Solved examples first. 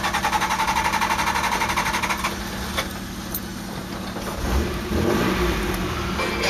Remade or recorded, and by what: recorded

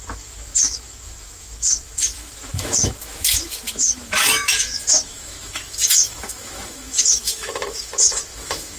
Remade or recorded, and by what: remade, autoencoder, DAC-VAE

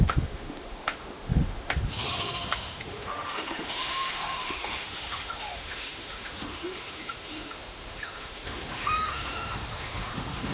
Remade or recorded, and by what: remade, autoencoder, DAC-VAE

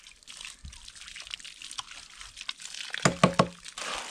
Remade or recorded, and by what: recorded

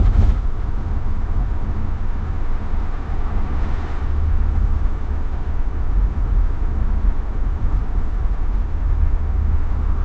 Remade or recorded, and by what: remade, autoencoder, DAC-VAE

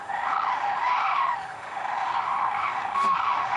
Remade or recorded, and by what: remade, autoencoder, DAC-VAE